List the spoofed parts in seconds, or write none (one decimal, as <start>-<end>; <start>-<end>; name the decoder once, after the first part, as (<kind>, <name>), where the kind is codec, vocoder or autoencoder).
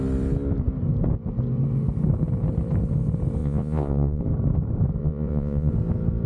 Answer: 3.4-4.2 (vocoder, Vocos); 5.0-5.7